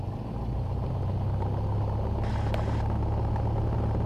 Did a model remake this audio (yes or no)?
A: no